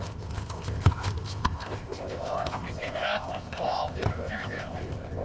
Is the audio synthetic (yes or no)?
yes